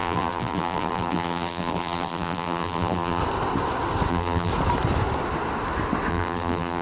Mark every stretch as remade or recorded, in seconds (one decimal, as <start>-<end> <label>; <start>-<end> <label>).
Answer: 0.0-3.2 remade; 3.2-4.1 recorded; 4.1-4.5 remade; 4.5-6.1 recorded; 6.1-6.8 remade